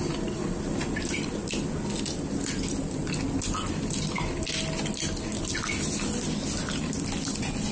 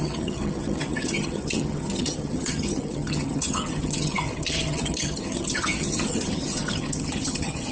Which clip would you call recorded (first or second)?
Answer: first